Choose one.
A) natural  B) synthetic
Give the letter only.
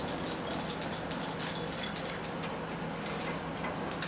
A